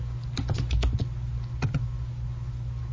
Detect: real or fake real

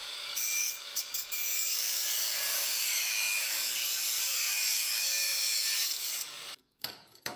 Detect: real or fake fake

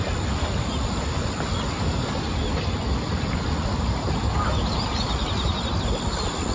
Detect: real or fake real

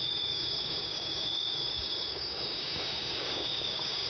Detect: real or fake fake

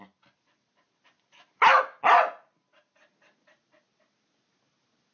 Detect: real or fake real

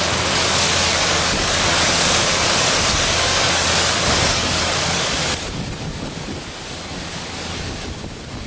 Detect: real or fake fake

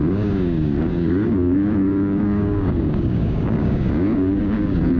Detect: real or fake fake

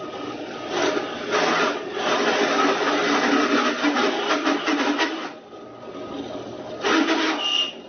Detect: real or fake real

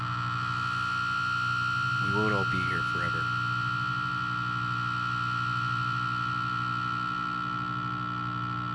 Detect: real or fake real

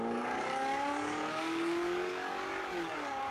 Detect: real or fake fake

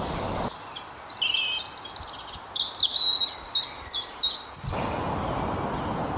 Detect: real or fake real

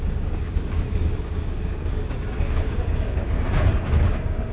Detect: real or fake fake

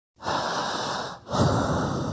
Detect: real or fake real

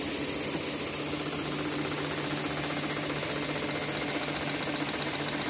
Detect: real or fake real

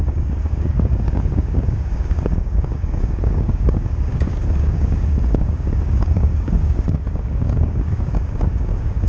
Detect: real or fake fake